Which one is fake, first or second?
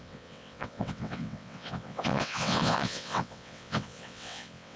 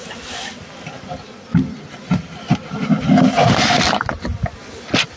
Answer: first